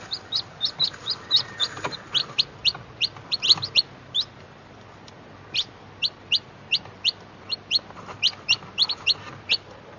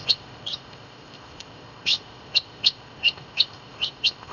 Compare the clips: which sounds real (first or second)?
first